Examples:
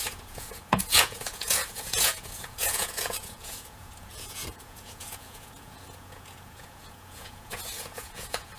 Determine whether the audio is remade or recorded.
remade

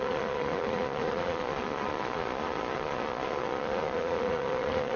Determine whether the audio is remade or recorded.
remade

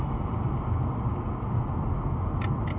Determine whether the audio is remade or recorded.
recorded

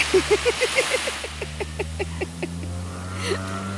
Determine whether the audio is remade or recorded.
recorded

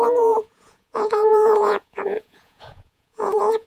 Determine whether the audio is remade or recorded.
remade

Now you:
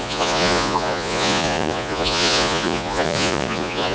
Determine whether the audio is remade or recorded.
remade